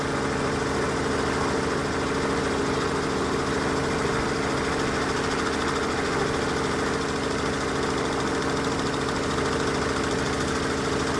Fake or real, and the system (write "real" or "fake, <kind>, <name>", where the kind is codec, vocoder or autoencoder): real